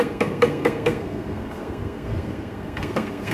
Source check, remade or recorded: remade